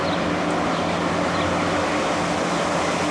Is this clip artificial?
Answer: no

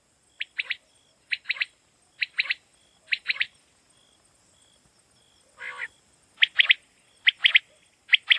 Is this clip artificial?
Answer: no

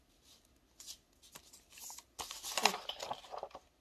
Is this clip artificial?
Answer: no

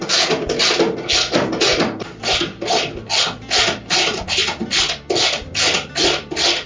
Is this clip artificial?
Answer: yes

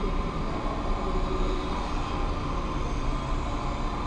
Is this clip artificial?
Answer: no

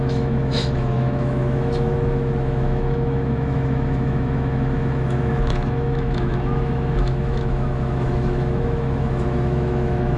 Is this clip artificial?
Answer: yes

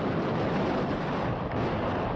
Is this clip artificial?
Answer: no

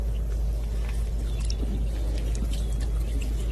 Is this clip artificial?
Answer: no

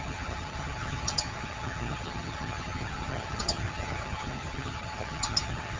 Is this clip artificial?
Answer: yes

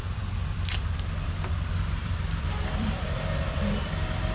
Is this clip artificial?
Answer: yes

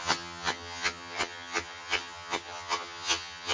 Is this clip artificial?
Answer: yes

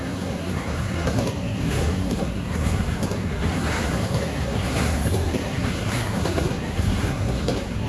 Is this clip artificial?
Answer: yes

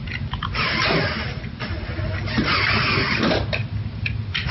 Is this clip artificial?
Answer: no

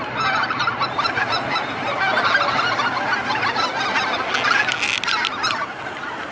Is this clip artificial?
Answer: no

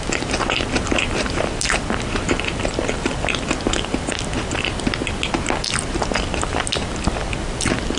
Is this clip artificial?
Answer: no